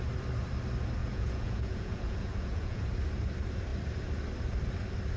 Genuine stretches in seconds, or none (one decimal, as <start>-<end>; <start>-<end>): 0.0-1.0; 2.8-5.2